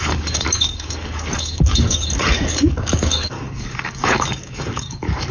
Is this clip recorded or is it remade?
remade